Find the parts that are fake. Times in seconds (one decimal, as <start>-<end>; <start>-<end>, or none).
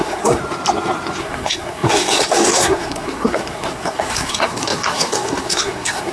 0.0-0.4; 1.2-6.1